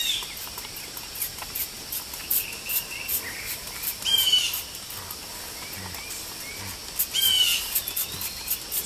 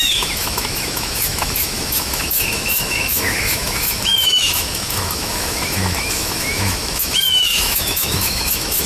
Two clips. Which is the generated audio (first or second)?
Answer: second